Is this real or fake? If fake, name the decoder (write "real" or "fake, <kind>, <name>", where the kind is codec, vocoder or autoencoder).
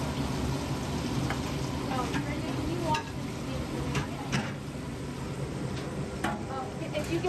real